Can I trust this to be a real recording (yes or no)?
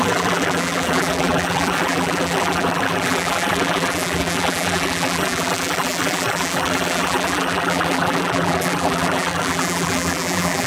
no